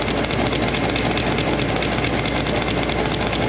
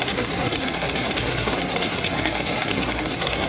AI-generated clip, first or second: second